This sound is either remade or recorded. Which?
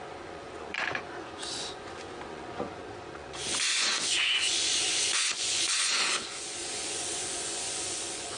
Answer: remade